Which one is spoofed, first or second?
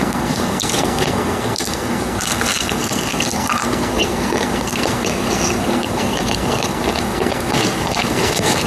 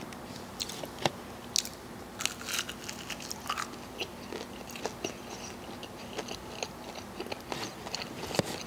first